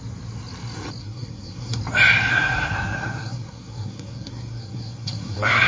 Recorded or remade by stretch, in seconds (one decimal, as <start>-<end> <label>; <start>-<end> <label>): 0.0-1.0 recorded; 1.0-1.8 remade; 1.8-2.3 recorded; 2.3-5.7 remade